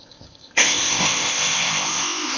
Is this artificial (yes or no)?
yes